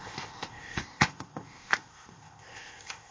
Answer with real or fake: fake